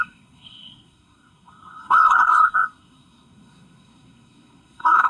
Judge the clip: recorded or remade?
remade